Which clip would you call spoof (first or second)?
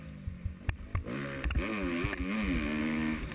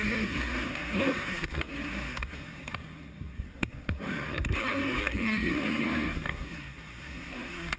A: second